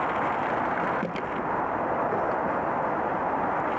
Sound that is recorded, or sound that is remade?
recorded